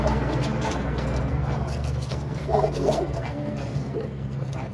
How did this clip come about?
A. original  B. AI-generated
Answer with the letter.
B